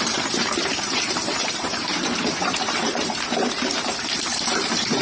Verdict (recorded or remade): remade